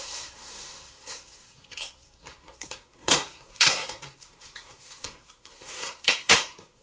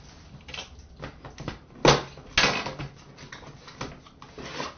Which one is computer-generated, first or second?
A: first